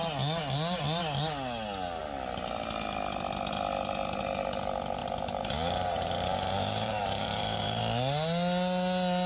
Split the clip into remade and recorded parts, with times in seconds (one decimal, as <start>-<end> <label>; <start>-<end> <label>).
0.0-5.0 recorded; 5.0-7.8 remade; 7.8-9.3 recorded